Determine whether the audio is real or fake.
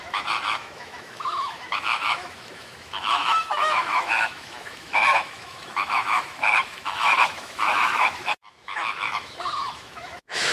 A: fake